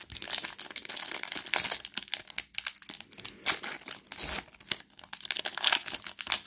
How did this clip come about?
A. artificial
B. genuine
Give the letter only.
B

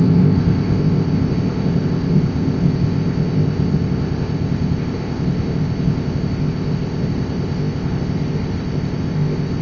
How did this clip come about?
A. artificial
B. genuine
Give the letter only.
A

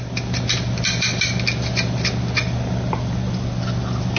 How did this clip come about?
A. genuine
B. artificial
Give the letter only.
A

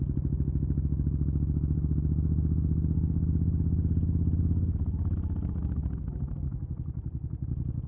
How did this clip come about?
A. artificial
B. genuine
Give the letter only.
B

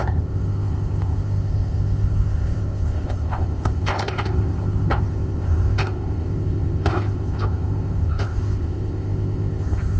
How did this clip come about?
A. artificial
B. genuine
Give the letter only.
A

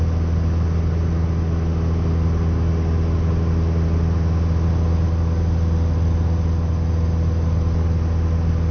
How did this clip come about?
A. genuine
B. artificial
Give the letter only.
A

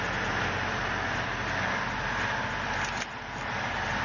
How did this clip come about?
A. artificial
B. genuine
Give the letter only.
B